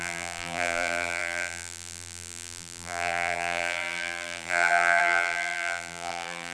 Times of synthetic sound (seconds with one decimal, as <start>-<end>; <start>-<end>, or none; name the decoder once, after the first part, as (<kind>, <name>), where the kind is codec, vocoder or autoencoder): 0.0-6.5 (vocoder, BigVGAN v2)